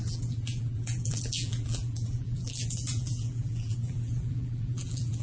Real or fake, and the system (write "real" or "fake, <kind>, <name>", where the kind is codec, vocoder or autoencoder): fake, vocoder, BigVGAN v2